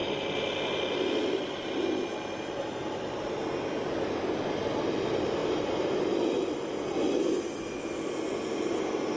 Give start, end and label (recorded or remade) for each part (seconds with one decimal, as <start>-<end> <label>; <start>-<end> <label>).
0.0-5.4 recorded; 5.4-7.3 remade; 7.3-9.2 recorded